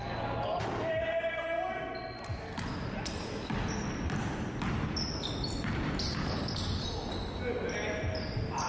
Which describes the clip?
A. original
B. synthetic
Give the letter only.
A